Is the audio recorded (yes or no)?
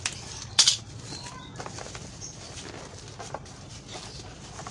no